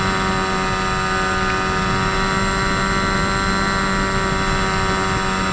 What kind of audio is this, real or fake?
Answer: real